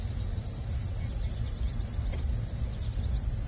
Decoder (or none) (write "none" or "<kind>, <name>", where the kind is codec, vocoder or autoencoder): none